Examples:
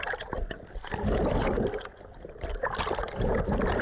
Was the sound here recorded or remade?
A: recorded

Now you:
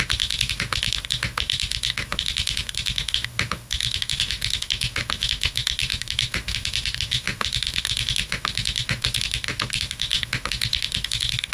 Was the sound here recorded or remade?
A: remade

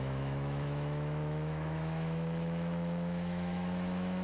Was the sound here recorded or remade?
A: remade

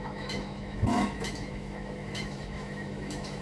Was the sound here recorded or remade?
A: remade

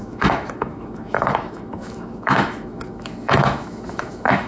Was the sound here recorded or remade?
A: remade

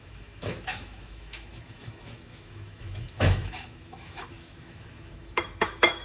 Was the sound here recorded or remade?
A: remade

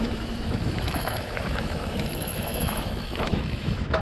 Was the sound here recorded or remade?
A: remade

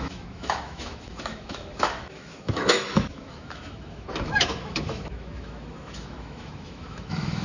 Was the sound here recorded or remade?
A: remade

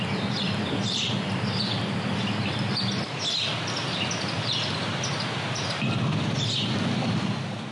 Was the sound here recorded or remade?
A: recorded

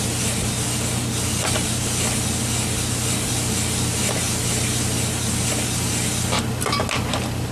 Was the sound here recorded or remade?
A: recorded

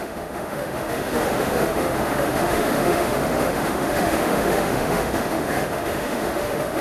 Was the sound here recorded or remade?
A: remade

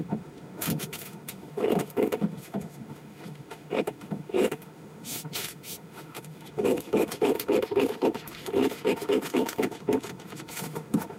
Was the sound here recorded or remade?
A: remade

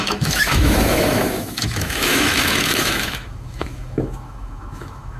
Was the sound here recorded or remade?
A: remade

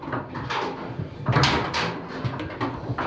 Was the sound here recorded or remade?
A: recorded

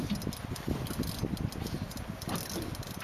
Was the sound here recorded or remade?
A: recorded